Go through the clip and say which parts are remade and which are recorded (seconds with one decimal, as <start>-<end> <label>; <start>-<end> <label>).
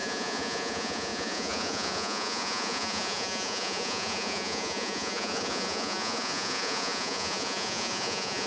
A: 0.0-8.5 remade